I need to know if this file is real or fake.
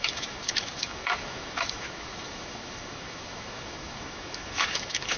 fake